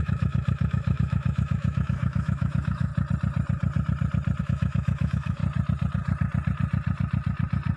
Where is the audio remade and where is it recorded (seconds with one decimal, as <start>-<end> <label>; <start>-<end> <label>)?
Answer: 0.0-2.9 remade; 2.9-4.4 recorded; 4.4-5.4 remade; 5.4-7.8 recorded